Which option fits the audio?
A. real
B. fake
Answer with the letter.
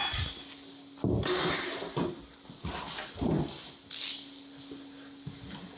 A